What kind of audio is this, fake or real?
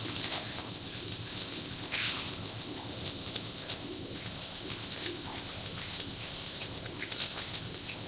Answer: fake